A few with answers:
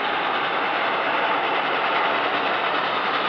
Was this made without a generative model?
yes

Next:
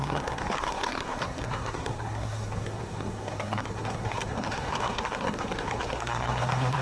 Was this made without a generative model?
no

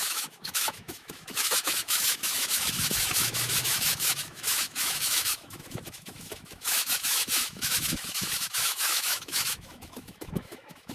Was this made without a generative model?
no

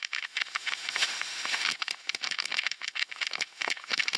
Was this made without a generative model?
no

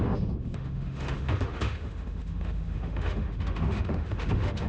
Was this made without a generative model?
no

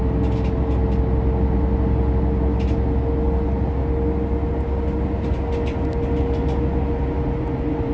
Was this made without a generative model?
yes